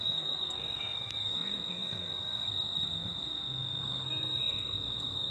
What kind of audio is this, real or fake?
fake